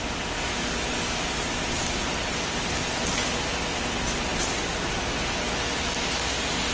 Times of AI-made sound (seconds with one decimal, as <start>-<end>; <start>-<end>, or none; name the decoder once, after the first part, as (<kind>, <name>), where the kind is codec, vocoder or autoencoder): none

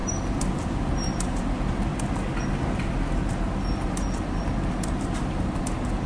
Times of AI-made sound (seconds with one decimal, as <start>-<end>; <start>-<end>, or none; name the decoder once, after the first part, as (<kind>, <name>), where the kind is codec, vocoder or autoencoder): none

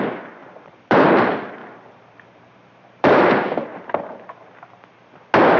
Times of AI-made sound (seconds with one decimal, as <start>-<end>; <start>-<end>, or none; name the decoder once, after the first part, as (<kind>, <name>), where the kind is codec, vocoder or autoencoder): 0.4-1.0 (vocoder, BigVGAN v2); 1.6-3.3